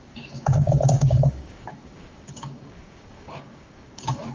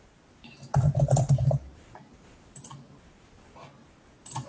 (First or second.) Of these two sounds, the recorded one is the second